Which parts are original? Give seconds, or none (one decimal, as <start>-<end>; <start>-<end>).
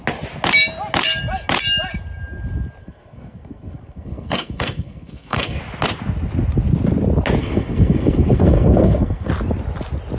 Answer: 0.0-2.8; 5.6-7.4; 9.3-10.2